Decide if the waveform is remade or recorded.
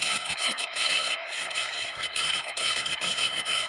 remade